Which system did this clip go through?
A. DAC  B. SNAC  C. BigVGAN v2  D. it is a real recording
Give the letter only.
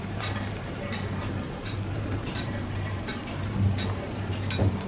C